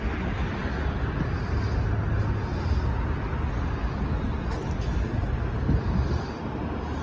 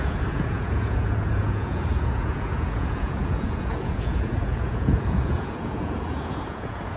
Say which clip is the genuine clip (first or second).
first